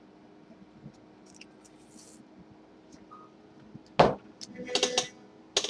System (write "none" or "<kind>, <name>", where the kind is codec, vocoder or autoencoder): none